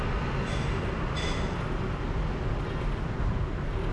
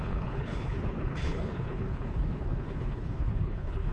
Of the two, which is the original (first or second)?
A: first